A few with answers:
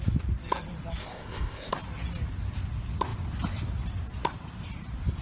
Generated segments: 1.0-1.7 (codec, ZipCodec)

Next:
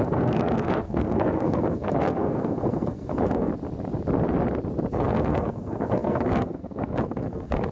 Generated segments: 0.0-3.5 (codec, SNAC); 4.9-7.7